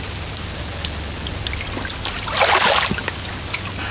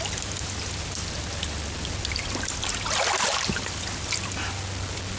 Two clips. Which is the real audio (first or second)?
first